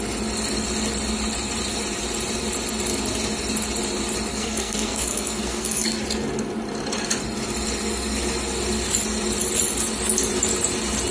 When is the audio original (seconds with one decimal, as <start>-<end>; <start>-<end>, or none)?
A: 0.0-4.3; 6.0-11.1